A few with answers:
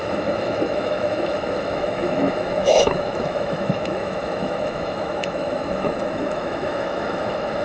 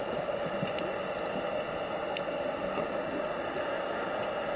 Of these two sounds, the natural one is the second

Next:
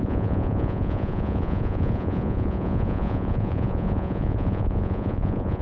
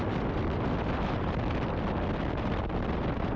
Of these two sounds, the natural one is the second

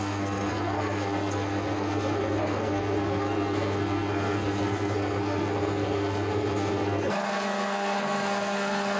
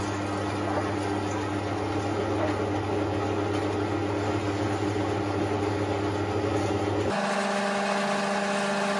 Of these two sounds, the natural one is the second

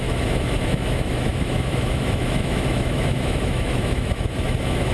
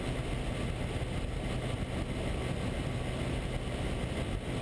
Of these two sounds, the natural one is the second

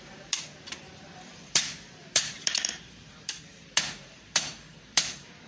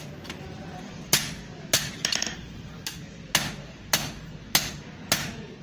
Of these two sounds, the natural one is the second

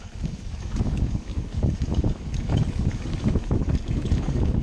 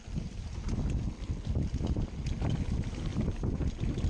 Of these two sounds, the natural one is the second